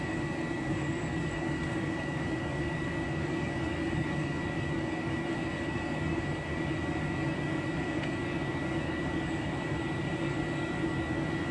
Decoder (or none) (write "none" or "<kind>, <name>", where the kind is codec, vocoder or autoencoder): codec, DAC